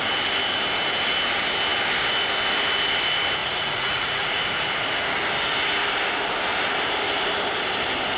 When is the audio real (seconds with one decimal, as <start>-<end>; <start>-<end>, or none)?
0.0-3.4; 4.4-8.2